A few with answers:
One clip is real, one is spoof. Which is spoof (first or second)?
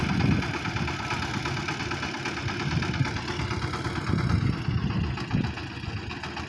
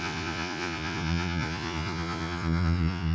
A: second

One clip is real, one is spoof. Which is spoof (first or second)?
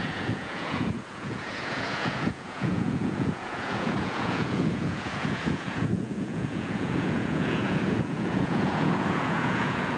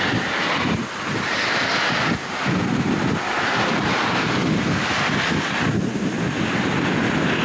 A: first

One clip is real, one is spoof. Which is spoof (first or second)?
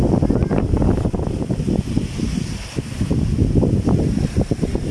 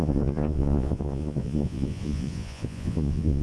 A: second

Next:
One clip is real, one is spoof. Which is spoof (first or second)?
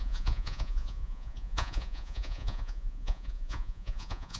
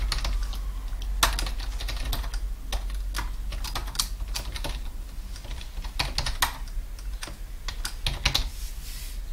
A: first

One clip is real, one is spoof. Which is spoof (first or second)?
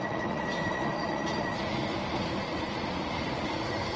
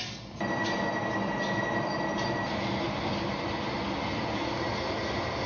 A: first